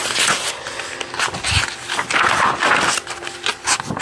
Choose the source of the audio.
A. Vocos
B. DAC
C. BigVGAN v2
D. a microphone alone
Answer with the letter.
D